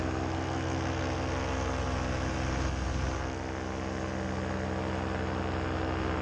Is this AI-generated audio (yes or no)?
no